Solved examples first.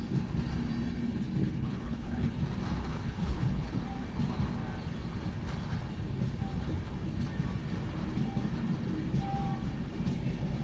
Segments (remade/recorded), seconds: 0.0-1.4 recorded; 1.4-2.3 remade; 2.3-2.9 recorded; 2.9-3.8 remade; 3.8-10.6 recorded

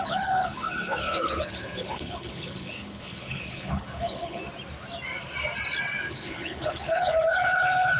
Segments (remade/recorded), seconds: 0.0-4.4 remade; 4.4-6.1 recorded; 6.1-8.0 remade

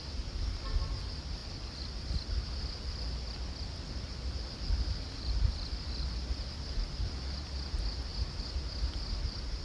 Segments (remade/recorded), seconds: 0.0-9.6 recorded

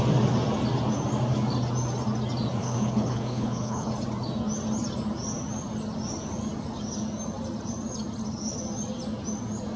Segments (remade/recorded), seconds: 0.0-2.6 recorded; 2.6-3.9 remade; 3.9-9.8 recorded